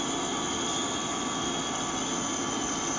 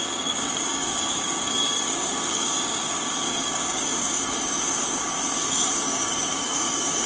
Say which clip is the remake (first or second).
second